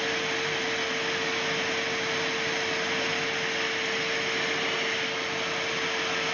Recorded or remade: recorded